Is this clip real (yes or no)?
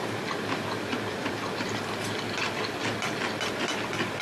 yes